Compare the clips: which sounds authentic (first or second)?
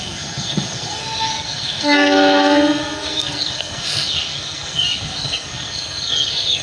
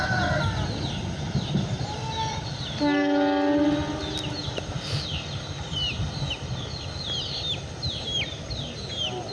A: second